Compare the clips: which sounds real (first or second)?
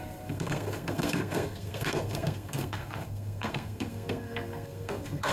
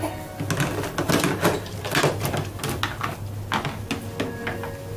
second